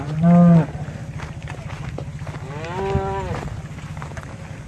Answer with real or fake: real